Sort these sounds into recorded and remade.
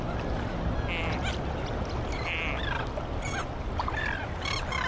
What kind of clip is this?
recorded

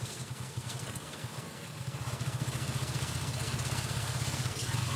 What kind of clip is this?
remade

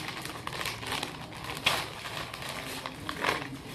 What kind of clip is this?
recorded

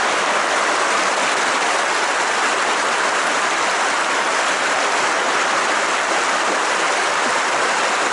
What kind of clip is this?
recorded